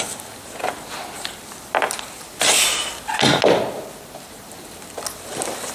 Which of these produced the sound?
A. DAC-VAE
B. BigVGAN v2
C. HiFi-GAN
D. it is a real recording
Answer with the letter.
D